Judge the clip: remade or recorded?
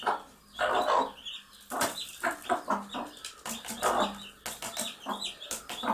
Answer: recorded